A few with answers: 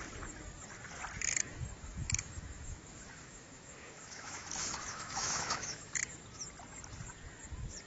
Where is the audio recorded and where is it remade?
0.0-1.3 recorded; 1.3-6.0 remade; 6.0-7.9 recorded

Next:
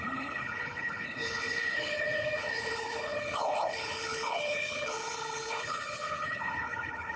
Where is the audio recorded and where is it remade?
0.0-7.2 remade

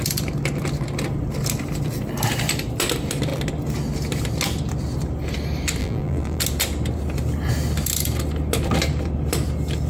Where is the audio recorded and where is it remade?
0.0-5.8 recorded; 5.8-6.4 remade; 6.4-9.9 recorded

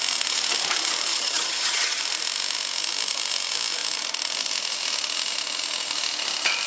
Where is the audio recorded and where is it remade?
0.0-1.1 recorded; 1.1-2.0 remade; 2.0-6.7 recorded

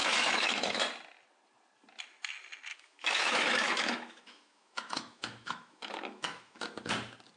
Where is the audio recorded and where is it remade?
0.0-0.8 remade; 0.8-2.7 recorded; 2.7-6.9 remade; 6.9-7.4 recorded

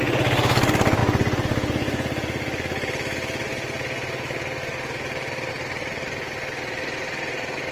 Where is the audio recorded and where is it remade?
0.0-7.7 recorded

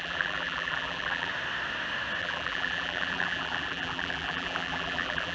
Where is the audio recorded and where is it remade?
0.0-1.3 remade; 1.3-2.2 recorded; 2.2-5.3 remade

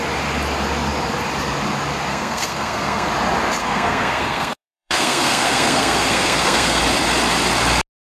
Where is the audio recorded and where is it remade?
0.0-2.1 recorded; 2.1-3.1 remade; 3.1-3.6 recorded; 3.6-6.8 remade; 6.8-8.1 recorded